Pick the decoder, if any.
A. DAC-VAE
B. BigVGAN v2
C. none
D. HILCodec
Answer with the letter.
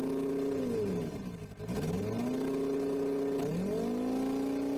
C